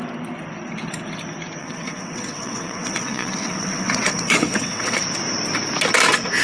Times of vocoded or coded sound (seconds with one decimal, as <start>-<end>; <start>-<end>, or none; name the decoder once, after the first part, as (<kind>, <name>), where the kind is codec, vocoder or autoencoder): 1.6-5.0 (vocoder, WaveNeXt)